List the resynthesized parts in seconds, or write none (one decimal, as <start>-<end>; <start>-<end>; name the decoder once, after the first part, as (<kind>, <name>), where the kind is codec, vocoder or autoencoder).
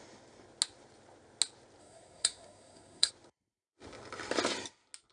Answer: 1.8-3.1 (codec, SNAC)